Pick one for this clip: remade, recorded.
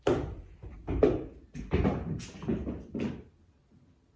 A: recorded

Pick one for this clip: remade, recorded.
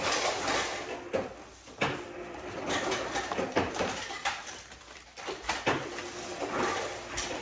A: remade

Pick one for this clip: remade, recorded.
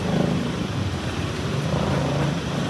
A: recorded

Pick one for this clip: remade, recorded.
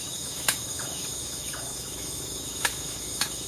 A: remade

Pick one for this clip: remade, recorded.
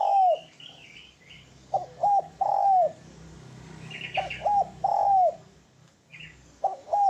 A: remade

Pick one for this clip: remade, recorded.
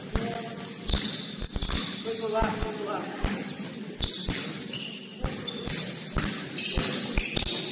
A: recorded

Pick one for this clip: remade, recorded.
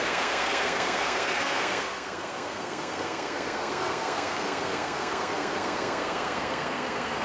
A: remade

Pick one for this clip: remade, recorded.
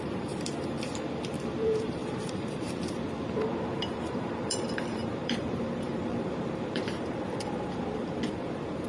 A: remade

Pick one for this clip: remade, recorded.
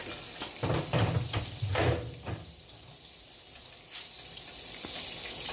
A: recorded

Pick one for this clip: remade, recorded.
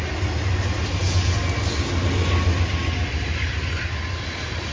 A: recorded